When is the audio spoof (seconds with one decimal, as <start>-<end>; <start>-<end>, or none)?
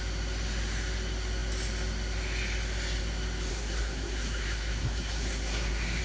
3.5-6.0